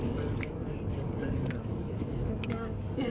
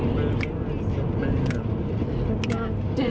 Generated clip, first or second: first